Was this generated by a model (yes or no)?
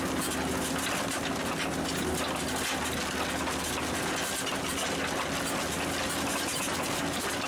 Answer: no